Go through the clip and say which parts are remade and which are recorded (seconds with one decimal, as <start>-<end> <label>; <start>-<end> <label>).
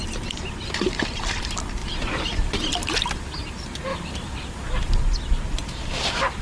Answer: 0.0-3.9 recorded; 3.9-5.0 remade; 5.0-6.4 recorded